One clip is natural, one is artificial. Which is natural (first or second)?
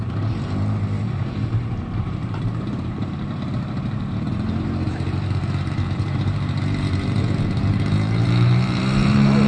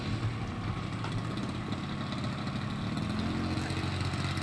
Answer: second